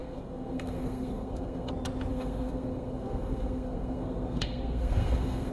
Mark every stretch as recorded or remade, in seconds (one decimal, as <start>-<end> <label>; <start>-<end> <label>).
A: 0.0-1.7 remade; 1.7-2.1 recorded; 2.1-5.5 remade